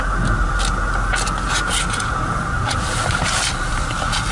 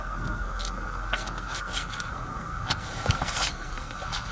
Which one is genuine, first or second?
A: first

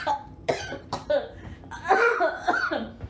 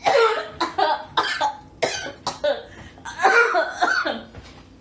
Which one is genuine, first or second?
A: second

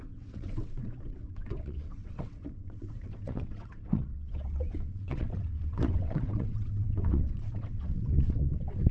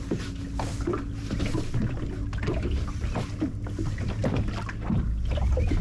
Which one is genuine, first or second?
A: second